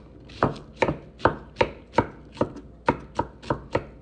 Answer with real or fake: real